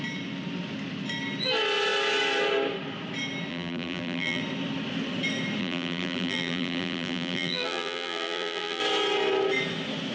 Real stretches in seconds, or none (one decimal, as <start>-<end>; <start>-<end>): 0.0-3.5; 4.4-5.6; 8.8-10.1